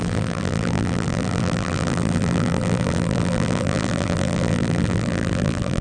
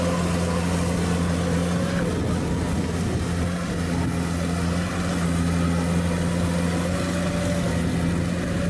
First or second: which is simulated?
first